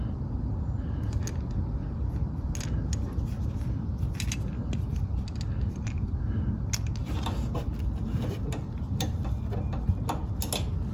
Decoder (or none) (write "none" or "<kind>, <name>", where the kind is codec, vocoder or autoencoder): none